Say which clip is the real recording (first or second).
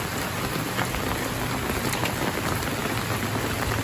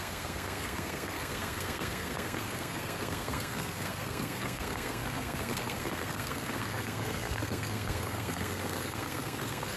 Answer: first